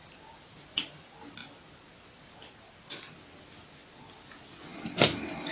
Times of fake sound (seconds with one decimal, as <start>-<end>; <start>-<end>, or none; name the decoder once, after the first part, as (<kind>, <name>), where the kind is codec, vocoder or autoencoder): none

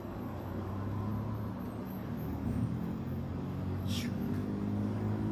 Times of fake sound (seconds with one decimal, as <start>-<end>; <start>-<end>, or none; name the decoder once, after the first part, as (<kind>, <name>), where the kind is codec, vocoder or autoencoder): 0.0-1.1 (codec, DAC); 1.8-5.3

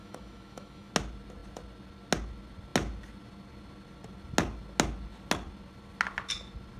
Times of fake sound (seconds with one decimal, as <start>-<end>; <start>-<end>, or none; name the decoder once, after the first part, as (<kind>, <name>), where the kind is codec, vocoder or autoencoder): 0.0-0.9 (autoencoder, DAC-VAE)

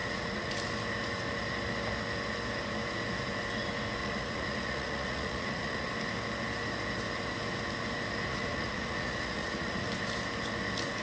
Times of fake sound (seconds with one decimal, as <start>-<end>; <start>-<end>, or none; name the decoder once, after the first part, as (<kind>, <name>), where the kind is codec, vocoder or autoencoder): 0.0-0.5 (vocoder, Vocos); 4.0-5.9; 8.3-9.9

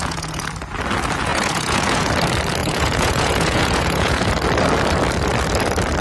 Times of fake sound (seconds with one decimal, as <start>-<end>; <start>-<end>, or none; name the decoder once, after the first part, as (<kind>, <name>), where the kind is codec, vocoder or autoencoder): 0.0-0.5 (vocoder, Vocos); 1.3-2.1; 2.6-4.3